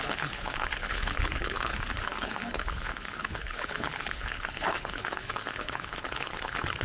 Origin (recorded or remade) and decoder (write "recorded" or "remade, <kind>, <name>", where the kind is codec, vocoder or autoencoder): remade, codec, HILCodec